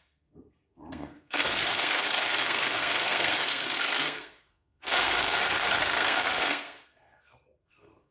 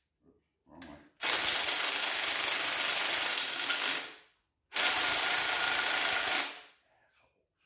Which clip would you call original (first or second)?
second